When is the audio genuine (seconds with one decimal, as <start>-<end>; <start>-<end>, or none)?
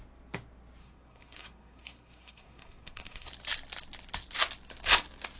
0.0-0.8; 3.3-5.4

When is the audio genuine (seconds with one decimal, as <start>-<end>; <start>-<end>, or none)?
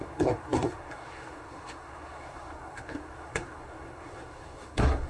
none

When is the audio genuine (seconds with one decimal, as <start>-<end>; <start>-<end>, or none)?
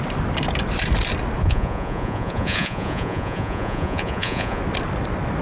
0.0-1.4; 4.6-5.4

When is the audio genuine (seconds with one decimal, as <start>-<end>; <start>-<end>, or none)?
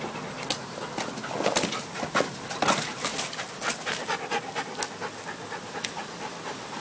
0.0-6.8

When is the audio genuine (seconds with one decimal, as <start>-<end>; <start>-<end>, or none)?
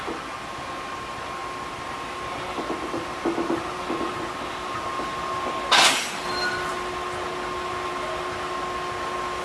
0.0-9.4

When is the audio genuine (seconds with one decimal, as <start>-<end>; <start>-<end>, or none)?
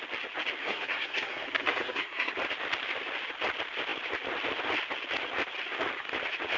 0.0-0.6; 2.3-6.6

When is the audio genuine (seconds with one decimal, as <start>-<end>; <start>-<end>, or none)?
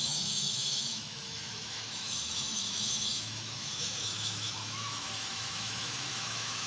none